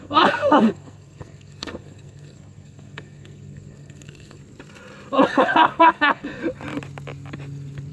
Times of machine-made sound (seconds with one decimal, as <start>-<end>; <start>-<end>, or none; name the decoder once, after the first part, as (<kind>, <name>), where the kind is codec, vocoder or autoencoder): 0.0-4.4 (codec, SNAC); 5.3-6.4